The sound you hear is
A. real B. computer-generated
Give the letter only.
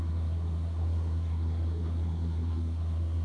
B